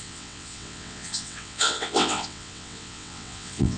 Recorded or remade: remade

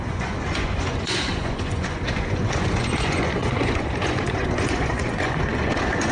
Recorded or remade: remade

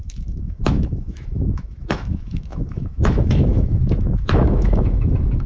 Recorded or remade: remade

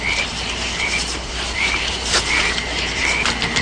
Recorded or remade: remade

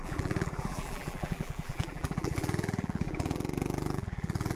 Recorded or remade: remade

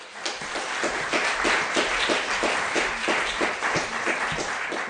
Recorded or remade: recorded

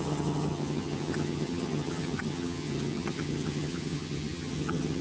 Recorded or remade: remade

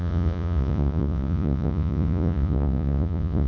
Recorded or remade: remade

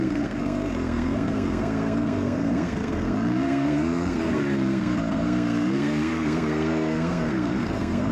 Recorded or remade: remade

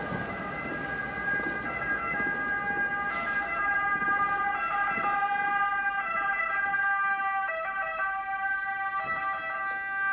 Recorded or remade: recorded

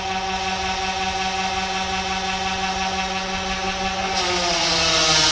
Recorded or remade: recorded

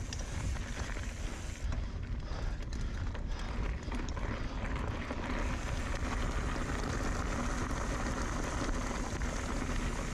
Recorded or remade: recorded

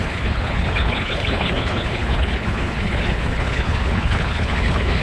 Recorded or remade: remade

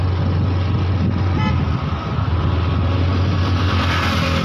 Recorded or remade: recorded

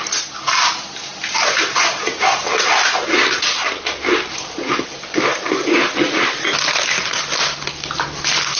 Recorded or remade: recorded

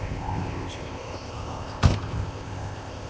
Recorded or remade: remade